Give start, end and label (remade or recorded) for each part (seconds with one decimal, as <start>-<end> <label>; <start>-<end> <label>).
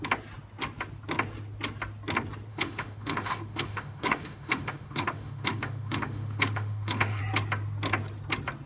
0.0-2.5 recorded; 2.5-7.2 remade; 7.2-8.7 recorded